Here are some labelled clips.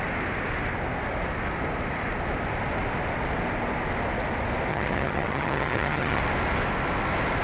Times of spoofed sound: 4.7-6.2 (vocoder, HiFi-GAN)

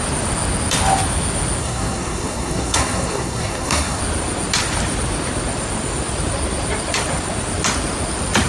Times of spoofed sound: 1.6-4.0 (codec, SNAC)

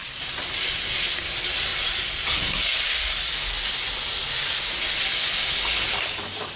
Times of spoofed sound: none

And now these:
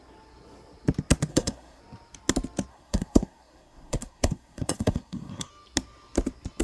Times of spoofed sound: 1.3-1.8 (codec, SNAC); 2.7-5.5